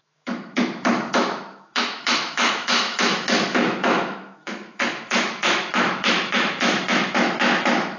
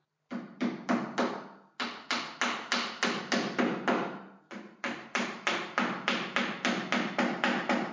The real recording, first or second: second